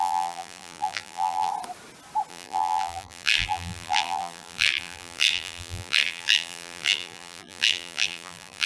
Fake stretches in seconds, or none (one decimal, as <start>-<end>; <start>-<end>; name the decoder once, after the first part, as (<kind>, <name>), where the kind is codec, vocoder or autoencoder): 0.0-1.5 (vocoder, BigVGAN v2); 2.3-8.7